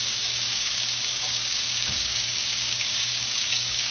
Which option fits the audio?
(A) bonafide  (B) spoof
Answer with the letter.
B